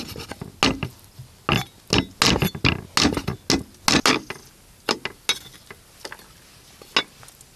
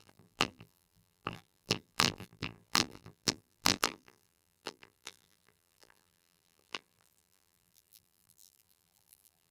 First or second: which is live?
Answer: first